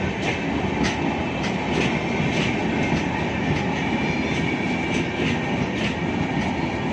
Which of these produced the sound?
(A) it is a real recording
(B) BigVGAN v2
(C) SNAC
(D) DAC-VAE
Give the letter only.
A